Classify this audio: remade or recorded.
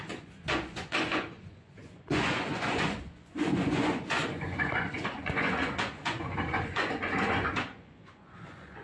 remade